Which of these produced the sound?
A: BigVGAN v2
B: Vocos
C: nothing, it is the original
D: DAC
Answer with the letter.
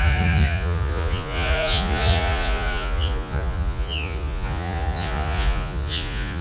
B